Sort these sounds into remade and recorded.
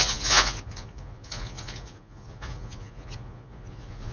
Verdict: remade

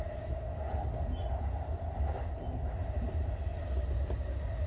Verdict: recorded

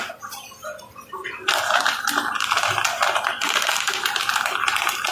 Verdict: recorded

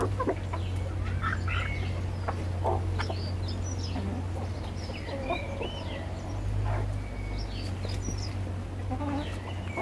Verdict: recorded